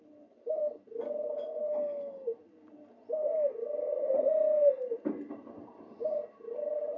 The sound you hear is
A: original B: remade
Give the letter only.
A